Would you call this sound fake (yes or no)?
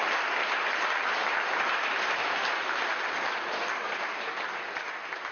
yes